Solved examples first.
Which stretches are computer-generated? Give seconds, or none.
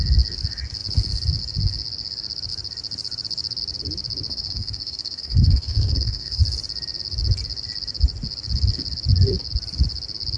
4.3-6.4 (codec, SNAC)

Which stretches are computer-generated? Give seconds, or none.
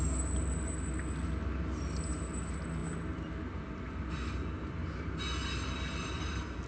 none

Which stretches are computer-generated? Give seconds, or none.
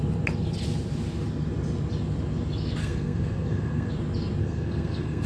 2.8-3.9 (codec, SNAC); 4.4-5.3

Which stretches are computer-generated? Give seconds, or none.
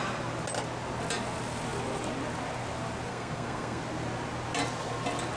3.1-3.8 (codec, SNAC)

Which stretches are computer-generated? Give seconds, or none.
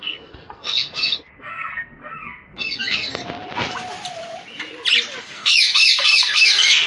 0.0-3.2 (codec, SNAC); 5.2-6.9